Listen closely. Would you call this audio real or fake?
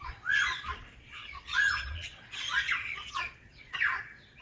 fake